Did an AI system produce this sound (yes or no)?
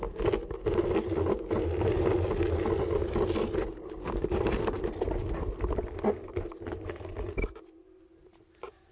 no